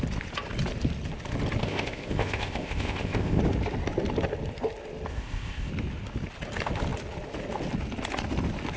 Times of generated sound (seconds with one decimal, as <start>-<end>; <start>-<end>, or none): 1.6-3.4; 5.1-5.7